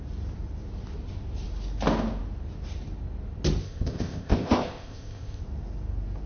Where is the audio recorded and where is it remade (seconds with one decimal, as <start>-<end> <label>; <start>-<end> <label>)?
0.0-3.6 recorded; 3.6-5.4 remade; 5.4-6.3 recorded